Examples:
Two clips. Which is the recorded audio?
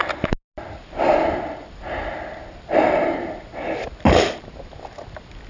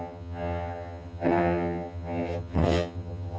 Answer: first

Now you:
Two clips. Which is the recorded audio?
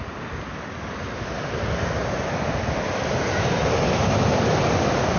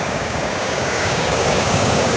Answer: first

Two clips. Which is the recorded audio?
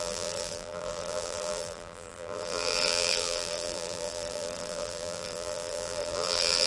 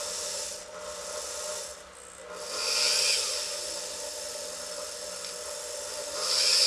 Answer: second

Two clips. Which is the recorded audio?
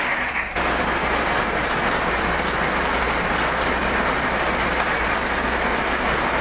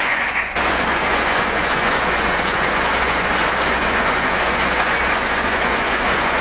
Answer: first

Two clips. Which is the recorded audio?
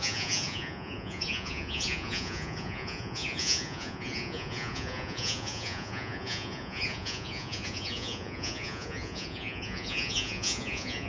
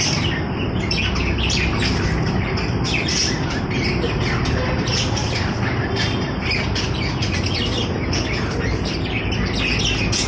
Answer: second